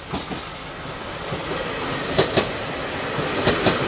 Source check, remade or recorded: recorded